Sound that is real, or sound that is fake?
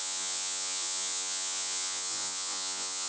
fake